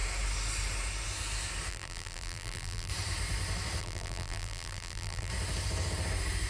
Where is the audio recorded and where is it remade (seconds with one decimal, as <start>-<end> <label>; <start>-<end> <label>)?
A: 0.0-1.7 recorded; 1.7-2.9 remade; 2.9-3.8 recorded; 3.8-5.3 remade; 5.3-6.5 recorded